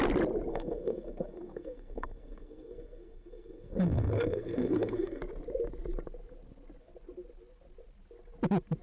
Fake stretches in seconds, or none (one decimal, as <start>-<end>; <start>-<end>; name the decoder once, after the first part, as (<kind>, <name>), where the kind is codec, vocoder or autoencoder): 0.5-5.2 (codec, SNAC)